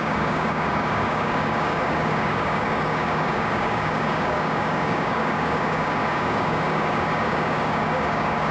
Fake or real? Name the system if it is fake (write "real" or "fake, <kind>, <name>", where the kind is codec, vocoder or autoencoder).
fake, codec, DAC